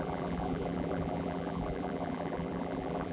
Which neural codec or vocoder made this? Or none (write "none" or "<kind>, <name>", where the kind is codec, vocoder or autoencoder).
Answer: vocoder, BigVGAN v2